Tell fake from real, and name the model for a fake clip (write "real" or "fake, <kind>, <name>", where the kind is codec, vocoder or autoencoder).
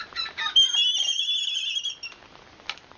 real